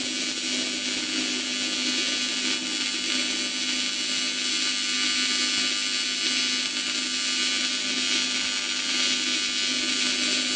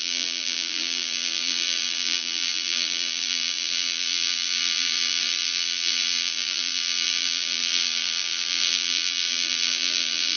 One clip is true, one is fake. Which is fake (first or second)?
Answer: second